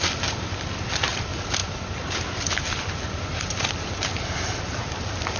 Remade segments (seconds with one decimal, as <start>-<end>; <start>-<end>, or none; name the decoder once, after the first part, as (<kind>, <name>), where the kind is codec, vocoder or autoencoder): none